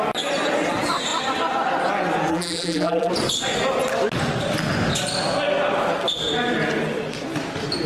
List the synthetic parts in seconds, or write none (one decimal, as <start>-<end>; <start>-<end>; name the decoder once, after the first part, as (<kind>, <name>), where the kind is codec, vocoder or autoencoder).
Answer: 2.3-3.1 (vocoder, BigVGAN v2)